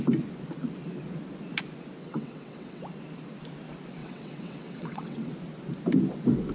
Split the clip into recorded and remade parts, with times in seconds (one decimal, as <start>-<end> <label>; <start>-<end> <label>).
0.0-2.0 recorded; 2.0-2.8 remade; 2.8-4.0 recorded; 4.0-5.3 remade; 5.3-6.5 recorded